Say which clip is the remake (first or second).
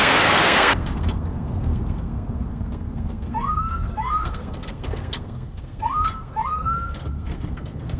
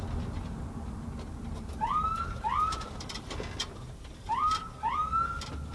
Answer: first